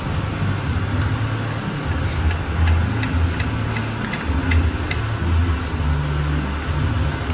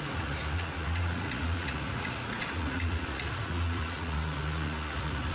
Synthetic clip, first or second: second